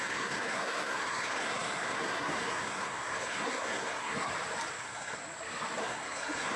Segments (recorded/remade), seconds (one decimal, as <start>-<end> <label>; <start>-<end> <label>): 0.0-4.3 remade; 4.3-4.8 recorded; 4.8-5.2 remade; 5.2-5.8 recorded; 5.8-6.6 remade